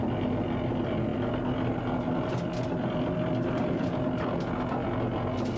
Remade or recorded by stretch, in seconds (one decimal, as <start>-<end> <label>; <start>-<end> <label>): 0.0-5.6 recorded